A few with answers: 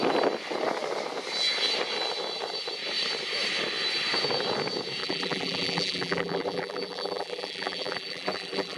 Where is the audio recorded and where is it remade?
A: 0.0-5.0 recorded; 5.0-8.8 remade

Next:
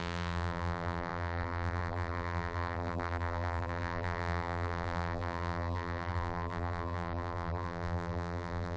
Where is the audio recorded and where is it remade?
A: 0.0-8.8 remade

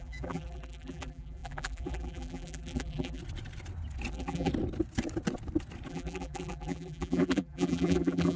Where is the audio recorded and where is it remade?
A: 0.0-3.2 remade; 3.2-4.1 recorded; 4.1-4.5 remade; 4.5-5.9 recorded; 5.9-8.4 remade

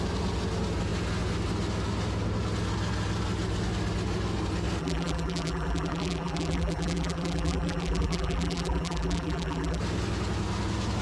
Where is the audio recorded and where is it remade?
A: 0.0-4.8 recorded; 4.8-9.8 remade; 9.8-11.0 recorded

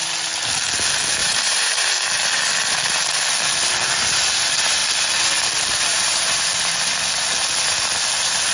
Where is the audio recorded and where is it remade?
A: 0.0-1.2 recorded; 1.2-1.9 remade; 1.9-5.9 recorded; 5.9-6.4 remade; 6.4-8.5 recorded

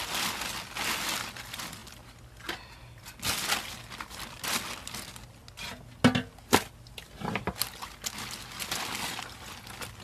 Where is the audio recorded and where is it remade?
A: 0.0-10.0 recorded

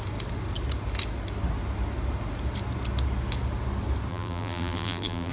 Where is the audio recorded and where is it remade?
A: 0.0-4.1 recorded; 4.1-5.3 remade

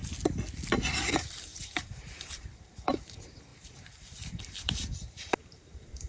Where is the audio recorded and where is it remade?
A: 0.0-0.7 recorded; 0.7-6.1 remade